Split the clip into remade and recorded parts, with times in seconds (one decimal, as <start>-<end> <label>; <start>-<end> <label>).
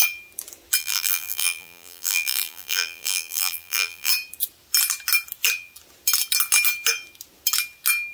0.0-0.8 recorded; 0.8-4.1 remade; 4.1-8.1 recorded